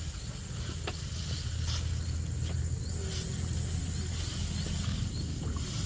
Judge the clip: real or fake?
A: real